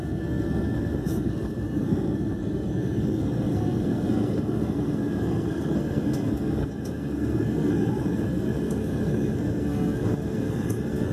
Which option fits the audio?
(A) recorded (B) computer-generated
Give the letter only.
B